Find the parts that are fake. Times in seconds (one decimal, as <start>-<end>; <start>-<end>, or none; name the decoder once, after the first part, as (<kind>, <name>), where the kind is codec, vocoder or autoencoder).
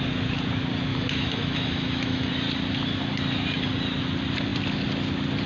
0.9-2.3 (autoencoder, DAC-VAE)